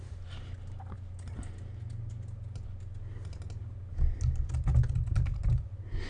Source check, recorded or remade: recorded